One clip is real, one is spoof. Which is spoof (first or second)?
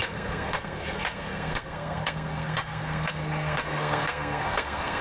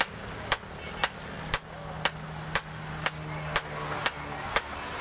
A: first